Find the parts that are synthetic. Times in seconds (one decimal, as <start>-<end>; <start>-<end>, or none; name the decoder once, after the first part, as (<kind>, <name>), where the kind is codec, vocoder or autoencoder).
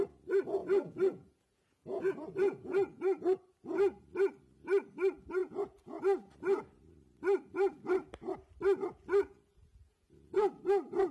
0.6-3.2 (vocoder, Vocos); 5.4-6.0; 9.2-10.5